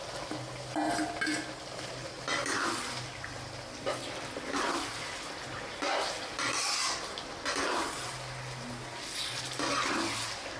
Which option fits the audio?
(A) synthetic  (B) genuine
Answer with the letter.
B